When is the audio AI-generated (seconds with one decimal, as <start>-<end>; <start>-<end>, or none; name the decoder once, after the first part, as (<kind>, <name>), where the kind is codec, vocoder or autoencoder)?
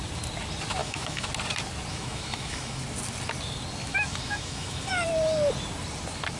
0.8-1.3 (autoencoder, DAC-VAE); 1.9-2.8; 3.8-4.9